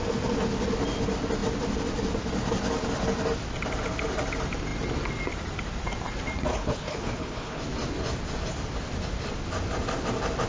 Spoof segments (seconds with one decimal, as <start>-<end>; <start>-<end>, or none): 6.5-7.6